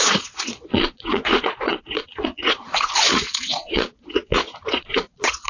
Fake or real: fake